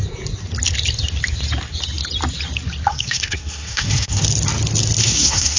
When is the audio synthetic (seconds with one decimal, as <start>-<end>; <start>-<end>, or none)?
2.9-4.2; 5.0-5.6